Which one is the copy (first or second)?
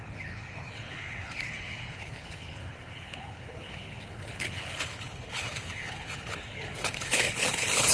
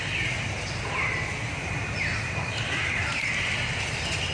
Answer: first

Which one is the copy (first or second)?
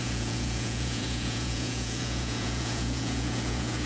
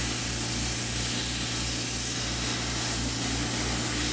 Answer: first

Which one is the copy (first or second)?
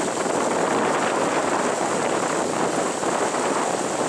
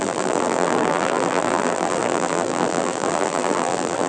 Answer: second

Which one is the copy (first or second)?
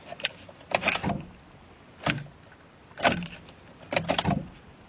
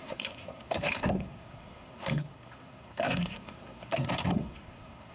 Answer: second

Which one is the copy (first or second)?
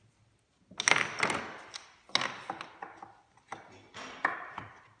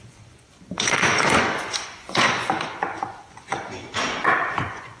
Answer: second